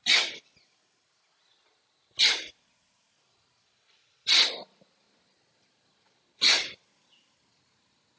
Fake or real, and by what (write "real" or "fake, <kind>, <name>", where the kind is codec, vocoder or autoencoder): real